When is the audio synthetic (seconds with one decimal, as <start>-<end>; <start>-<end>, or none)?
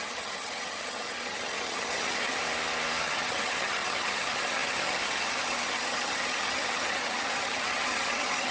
0.0-2.4; 3.0-8.5